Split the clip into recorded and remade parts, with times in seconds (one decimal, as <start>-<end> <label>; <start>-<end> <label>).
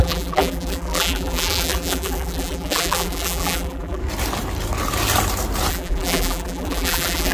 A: 0.0-4.0 remade; 4.0-5.7 recorded; 5.7-7.3 remade